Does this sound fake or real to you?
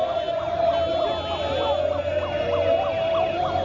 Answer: real